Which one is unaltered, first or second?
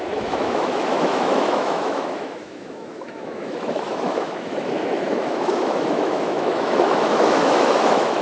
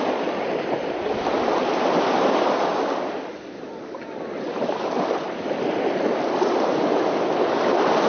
second